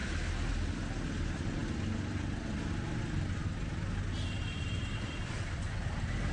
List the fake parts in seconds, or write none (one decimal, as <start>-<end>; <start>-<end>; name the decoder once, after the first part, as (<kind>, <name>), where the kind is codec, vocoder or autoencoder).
none